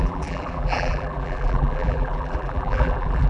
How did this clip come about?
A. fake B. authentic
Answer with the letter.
A